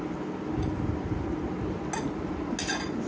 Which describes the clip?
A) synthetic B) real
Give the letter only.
B